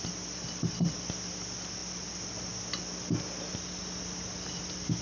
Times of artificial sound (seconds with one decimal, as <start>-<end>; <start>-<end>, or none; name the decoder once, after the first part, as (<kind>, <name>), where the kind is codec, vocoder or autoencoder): none